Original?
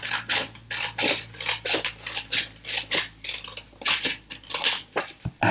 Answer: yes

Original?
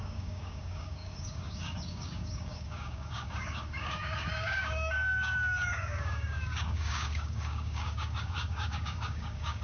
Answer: no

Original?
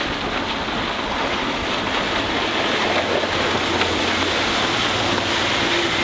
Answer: yes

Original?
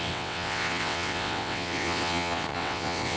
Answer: no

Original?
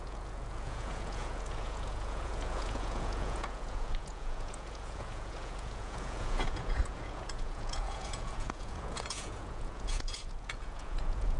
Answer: no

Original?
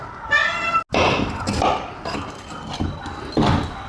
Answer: yes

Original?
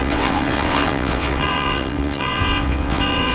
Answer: no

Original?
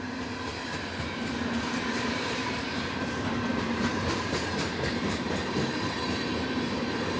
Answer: no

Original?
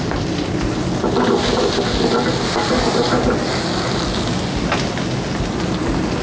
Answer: yes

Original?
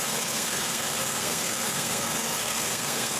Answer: no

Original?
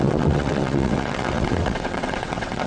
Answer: no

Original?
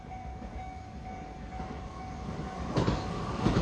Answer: no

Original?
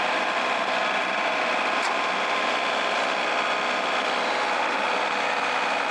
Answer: no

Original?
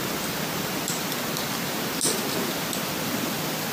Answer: yes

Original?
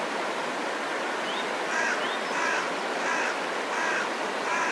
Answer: yes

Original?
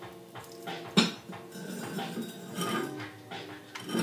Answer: yes